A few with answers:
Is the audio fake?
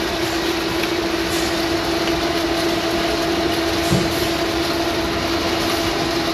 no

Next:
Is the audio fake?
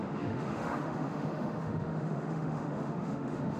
yes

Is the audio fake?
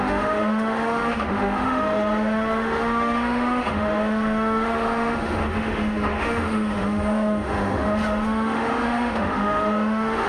yes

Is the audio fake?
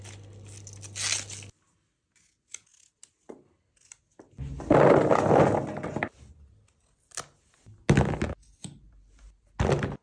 no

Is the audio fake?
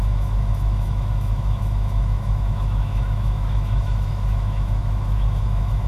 yes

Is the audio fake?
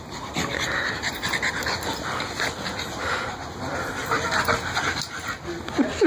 no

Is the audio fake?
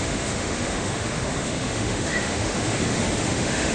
yes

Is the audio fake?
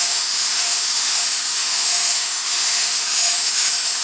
yes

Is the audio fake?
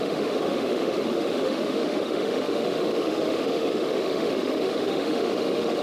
yes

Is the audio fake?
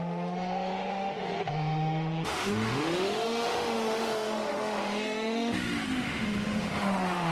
yes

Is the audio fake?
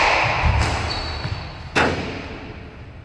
no